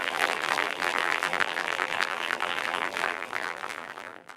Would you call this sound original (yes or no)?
no